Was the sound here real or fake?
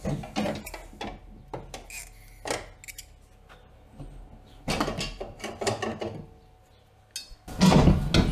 real